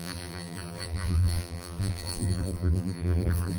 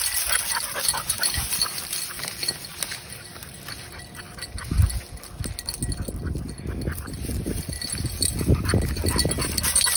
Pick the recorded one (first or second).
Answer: second